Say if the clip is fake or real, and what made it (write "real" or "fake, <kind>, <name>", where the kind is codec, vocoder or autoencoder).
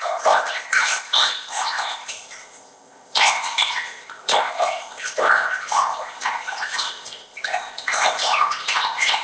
fake, codec, ZipCodec